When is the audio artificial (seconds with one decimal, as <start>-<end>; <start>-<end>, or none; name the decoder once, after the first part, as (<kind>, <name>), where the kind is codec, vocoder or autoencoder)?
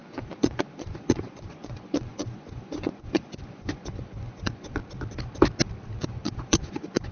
0.0-4.8 (vocoder, Vocos); 6.0-7.1